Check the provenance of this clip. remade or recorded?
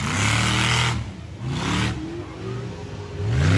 recorded